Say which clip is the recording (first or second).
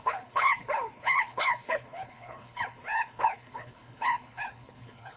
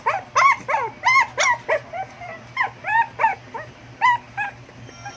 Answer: second